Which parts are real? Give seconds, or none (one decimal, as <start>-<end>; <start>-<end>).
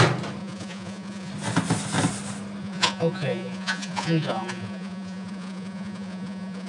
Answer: 0.0-0.4; 1.3-2.6